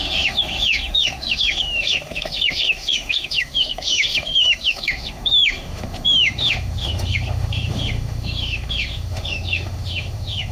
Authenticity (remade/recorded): remade